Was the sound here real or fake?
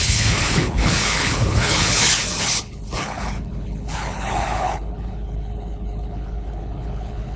fake